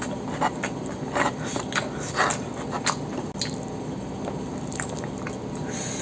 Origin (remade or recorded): recorded